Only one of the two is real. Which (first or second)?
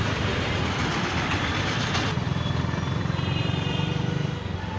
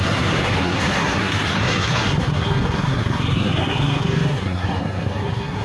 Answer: first